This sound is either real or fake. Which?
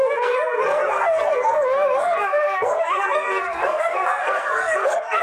fake